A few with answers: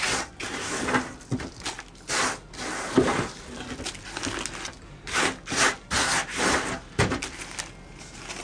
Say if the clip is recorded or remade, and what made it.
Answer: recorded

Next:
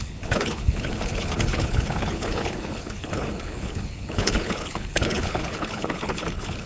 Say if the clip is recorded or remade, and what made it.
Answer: remade, codec, HILCodec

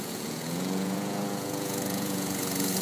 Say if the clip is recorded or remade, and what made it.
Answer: remade, vocoder, Vocos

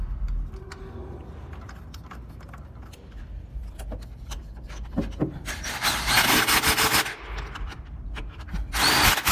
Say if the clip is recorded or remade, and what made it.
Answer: recorded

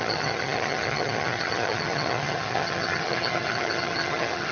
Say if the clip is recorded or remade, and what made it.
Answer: remade, vocoder, HiFi-GAN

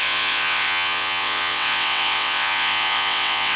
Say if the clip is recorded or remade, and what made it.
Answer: remade, vocoder, WaveNeXt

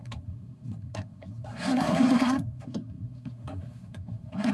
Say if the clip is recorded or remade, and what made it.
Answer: remade, codec, SNAC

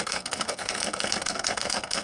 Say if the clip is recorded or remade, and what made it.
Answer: remade, codec, SNAC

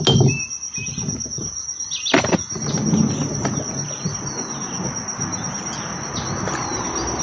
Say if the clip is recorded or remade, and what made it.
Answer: recorded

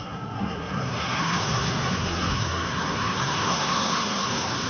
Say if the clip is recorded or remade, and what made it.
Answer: remade, codec, SNAC